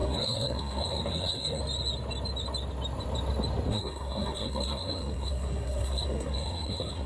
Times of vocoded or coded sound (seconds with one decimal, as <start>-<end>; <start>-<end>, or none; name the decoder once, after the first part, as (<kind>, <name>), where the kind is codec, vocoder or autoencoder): 0.0-1.6 (codec, SNAC); 3.7-7.1